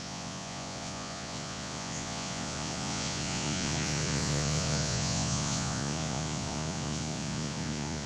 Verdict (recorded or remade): remade